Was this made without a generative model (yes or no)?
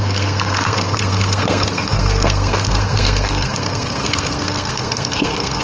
no